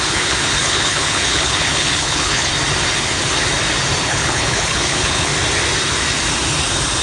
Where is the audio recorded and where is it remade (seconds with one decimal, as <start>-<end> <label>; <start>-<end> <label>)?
0.0-2.5 remade; 2.5-4.1 recorded; 4.1-5.3 remade; 5.3-7.0 recorded